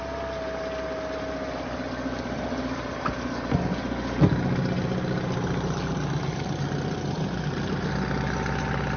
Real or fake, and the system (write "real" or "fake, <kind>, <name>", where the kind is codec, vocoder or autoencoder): real